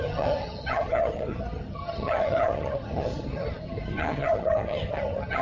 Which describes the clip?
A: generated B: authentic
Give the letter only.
A